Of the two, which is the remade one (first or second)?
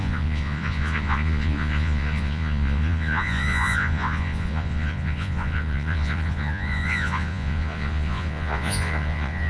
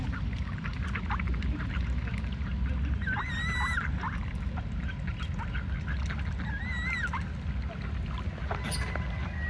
first